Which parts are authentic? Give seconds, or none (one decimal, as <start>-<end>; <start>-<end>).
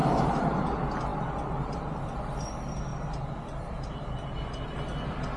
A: 0.6-1.1; 2.4-2.9